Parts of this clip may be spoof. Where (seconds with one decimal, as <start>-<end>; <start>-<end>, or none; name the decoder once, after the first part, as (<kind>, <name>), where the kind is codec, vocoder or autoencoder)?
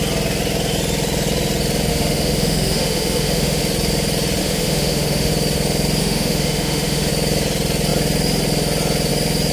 1.9-3.6 (autoencoder, DAC-VAE); 4.4-5.3; 6.0-7.1